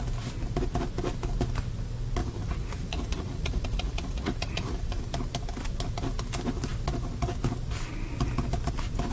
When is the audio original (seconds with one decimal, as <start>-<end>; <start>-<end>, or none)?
0.0-2.2; 5.0-9.1